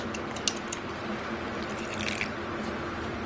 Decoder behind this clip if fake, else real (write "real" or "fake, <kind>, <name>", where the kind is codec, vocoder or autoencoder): real